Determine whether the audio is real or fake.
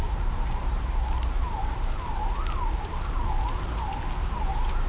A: real